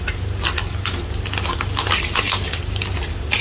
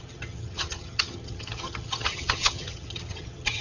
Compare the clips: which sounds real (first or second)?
first